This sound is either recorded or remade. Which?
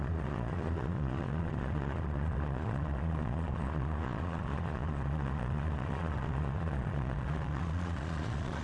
remade